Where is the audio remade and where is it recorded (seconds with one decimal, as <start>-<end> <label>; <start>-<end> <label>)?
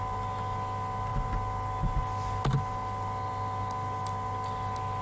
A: 0.0-5.0 recorded